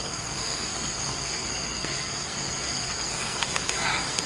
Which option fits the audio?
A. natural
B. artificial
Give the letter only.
B